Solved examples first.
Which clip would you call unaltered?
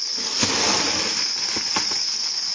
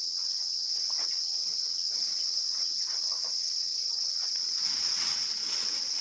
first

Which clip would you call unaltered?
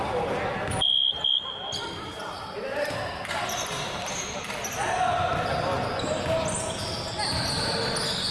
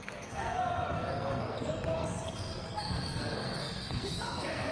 first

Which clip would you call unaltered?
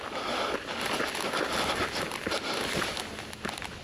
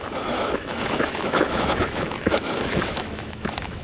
first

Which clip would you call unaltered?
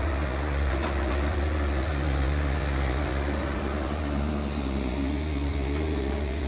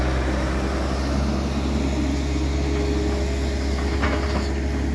second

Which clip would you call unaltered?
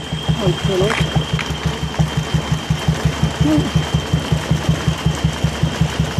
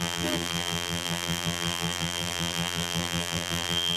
first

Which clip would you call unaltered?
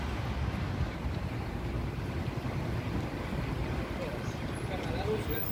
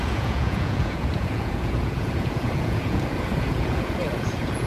first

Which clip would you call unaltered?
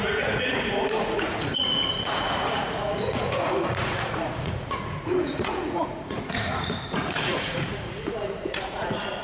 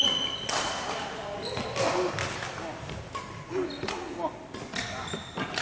second